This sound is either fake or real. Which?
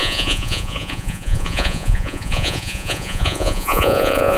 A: fake